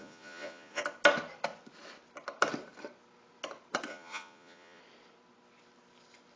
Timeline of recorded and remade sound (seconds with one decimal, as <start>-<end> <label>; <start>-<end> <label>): 0.0-0.8 remade; 0.8-3.9 recorded; 3.9-4.8 remade; 4.8-6.4 recorded

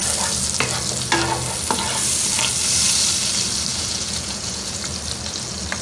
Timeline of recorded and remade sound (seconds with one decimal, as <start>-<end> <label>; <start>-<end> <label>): 0.0-3.7 recorded; 3.7-4.9 remade; 4.9-5.8 recorded